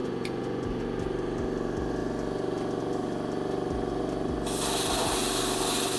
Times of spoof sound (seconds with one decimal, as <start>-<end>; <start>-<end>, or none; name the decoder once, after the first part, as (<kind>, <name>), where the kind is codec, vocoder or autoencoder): 0.0-0.8 (vocoder, Vocos)